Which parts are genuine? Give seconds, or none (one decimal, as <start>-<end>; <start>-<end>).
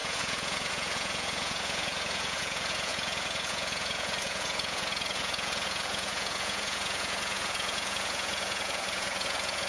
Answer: none